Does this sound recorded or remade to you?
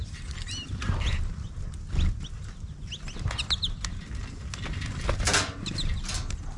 recorded